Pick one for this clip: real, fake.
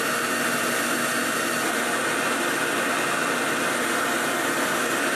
real